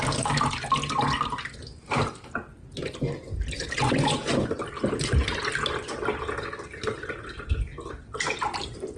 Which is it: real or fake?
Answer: real